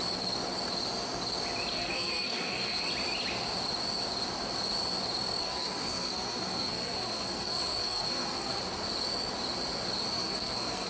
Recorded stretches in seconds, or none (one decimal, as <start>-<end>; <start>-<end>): 0.0-1.7; 2.9-5.4; 8.6-10.1